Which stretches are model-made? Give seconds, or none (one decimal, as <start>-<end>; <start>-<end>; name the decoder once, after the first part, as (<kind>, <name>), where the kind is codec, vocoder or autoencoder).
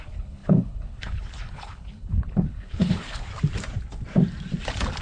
0.0-3.3 (codec, HILCodec)